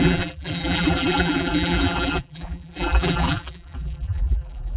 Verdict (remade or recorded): remade